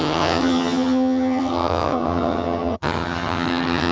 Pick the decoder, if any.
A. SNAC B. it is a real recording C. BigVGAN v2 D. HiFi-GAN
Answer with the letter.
D